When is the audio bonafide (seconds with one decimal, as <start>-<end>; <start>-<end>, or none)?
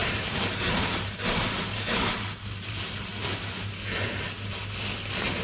3.1-5.4